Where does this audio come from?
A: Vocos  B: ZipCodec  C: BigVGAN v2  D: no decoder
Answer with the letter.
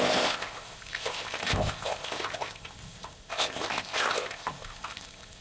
B